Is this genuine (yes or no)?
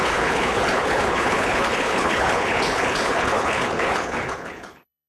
no